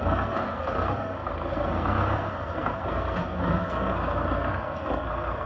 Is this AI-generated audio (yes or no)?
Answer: yes